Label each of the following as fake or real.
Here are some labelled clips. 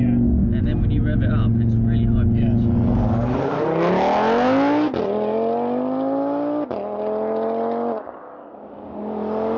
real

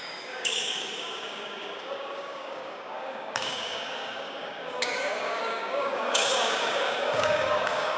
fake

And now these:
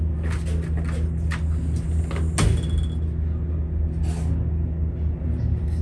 real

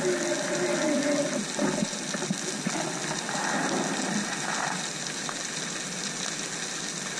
real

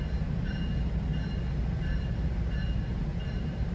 real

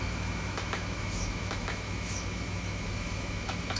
fake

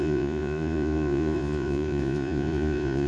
fake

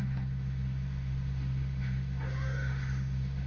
fake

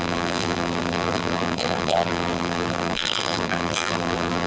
fake